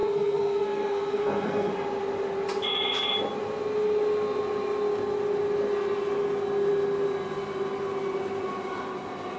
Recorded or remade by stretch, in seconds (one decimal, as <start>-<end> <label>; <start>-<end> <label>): 0.0-1.7 remade; 1.7-9.4 recorded